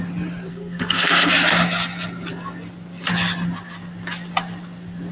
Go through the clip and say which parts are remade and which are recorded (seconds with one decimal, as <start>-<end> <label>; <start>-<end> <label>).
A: 0.0-0.5 recorded; 0.5-1.3 remade; 1.3-5.1 recorded